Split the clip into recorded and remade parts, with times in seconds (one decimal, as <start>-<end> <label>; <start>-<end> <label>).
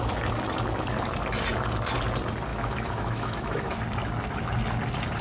0.0-2.5 recorded; 2.5-3.8 remade; 3.8-5.2 recorded